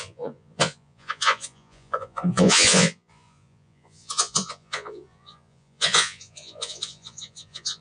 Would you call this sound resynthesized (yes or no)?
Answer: yes